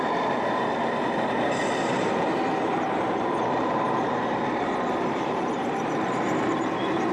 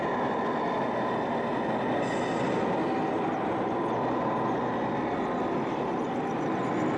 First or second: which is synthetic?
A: first